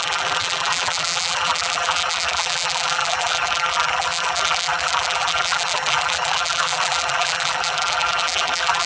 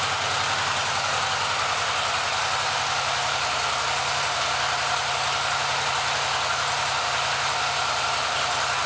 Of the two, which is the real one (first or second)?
second